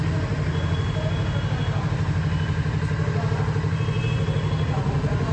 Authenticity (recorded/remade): recorded